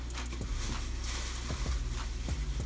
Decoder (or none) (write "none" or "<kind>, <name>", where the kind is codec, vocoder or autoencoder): none